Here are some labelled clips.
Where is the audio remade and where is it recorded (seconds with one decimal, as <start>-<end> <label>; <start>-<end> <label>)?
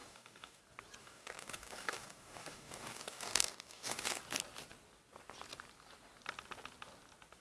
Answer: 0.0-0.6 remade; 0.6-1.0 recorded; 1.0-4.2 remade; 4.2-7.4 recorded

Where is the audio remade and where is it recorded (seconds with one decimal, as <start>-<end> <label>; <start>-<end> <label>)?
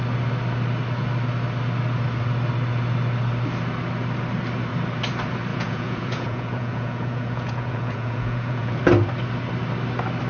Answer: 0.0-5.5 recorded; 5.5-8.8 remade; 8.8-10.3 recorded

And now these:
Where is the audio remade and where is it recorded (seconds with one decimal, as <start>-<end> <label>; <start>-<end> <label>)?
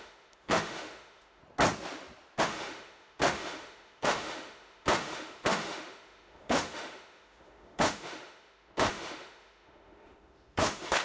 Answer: 0.0-1.4 remade; 1.4-2.4 recorded; 2.4-11.0 remade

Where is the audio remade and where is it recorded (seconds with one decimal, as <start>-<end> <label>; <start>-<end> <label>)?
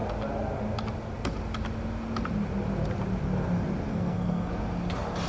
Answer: 0.0-3.9 recorded; 3.9-4.5 remade; 4.5-5.3 recorded